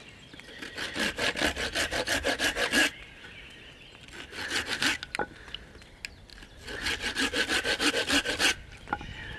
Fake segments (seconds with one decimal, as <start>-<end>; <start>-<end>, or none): none